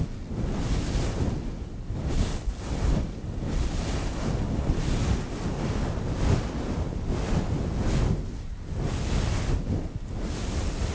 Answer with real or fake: real